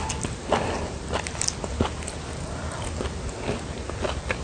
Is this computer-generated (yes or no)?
no